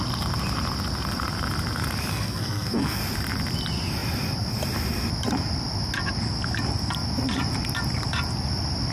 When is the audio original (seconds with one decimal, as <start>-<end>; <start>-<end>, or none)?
0.0-2.1; 3.0-8.9